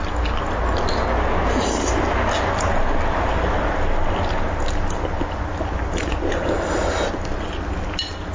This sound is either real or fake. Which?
real